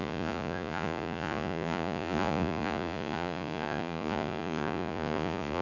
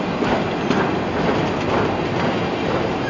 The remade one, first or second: first